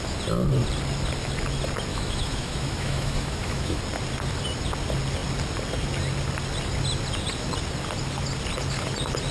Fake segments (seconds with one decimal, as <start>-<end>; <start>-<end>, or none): 1.9-3.8